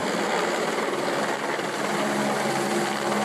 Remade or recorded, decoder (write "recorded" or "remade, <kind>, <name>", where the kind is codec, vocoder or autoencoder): recorded